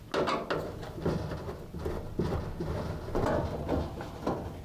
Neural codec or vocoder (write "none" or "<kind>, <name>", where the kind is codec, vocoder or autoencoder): none